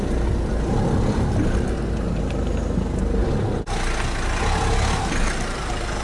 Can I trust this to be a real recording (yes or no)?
yes